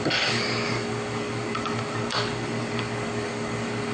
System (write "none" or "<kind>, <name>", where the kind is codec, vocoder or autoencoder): codec, DAC